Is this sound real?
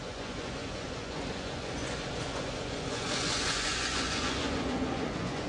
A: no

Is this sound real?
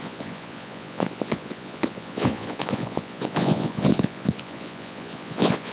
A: no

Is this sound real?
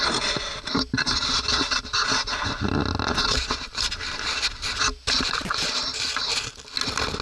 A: yes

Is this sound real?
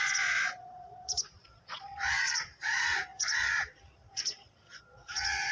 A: no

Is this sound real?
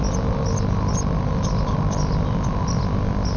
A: yes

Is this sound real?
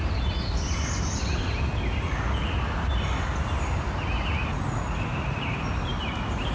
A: yes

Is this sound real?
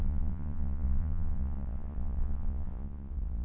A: no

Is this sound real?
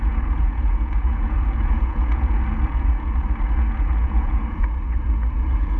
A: no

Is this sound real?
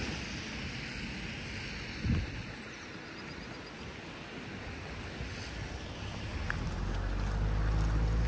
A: yes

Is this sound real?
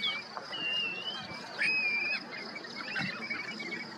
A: yes